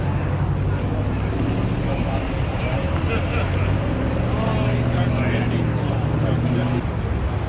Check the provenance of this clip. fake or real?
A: real